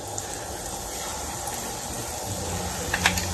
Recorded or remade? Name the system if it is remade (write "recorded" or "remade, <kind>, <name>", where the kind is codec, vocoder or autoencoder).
recorded